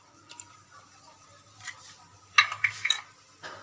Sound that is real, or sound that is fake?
real